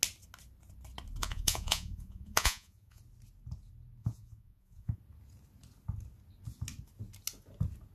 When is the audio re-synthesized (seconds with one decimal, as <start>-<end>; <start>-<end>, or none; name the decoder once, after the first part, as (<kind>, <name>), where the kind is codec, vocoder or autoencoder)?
1.2-3.0 (vocoder, Vocos); 4.0-5.0